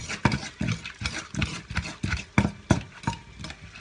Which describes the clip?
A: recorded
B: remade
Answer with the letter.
A